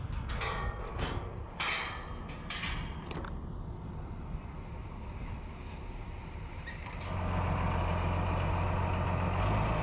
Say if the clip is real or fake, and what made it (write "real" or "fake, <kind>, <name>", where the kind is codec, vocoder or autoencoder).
real